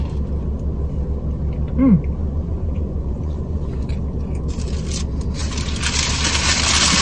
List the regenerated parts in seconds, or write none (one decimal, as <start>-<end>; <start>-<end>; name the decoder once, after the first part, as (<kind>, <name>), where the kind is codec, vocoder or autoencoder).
2.2-3.9 (vocoder, Vocos)